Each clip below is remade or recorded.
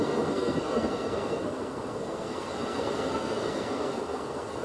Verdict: remade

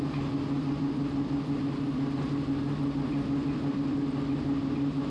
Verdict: recorded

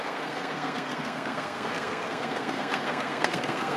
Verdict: remade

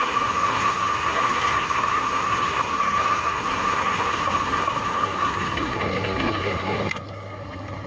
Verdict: remade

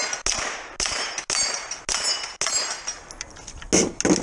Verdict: recorded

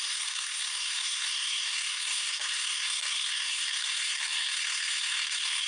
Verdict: remade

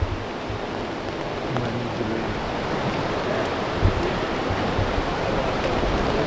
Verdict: recorded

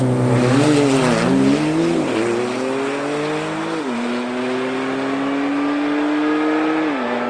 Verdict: recorded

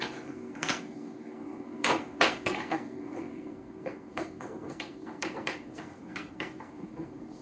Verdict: remade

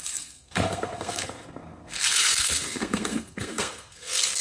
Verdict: remade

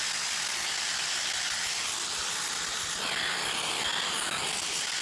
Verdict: recorded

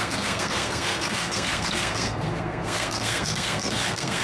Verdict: remade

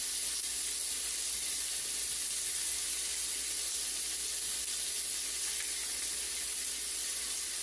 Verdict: recorded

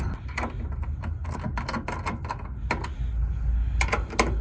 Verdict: recorded